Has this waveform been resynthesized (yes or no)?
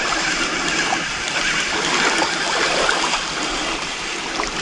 no